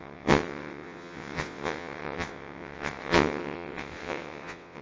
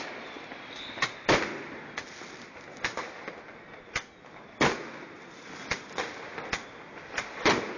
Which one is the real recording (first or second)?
second